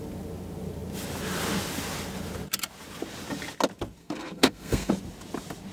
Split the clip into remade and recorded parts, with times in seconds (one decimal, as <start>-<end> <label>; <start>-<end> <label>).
0.0-4.0 recorded; 4.0-4.9 remade; 4.9-5.7 recorded